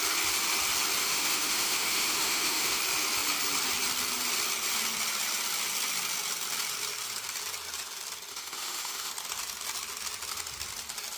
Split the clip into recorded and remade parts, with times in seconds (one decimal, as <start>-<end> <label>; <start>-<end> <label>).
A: 0.0-1.0 recorded; 1.0-2.8 remade; 2.8-8.3 recorded; 8.3-9.1 remade; 9.1-11.2 recorded